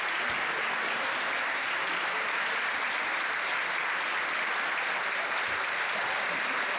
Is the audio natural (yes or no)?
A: yes